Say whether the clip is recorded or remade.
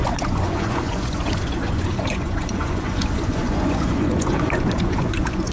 remade